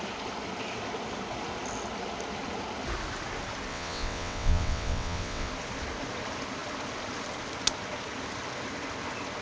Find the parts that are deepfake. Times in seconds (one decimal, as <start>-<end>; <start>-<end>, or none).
3.7-5.5